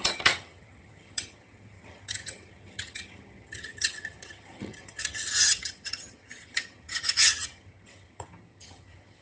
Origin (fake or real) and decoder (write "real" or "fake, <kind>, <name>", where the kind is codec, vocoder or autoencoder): fake, vocoder, HiFi-GAN